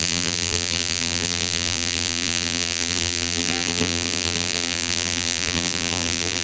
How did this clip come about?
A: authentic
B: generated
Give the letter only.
B